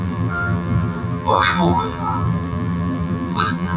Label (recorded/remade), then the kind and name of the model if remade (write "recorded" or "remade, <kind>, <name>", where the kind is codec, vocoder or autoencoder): remade, vocoder, BigVGAN v2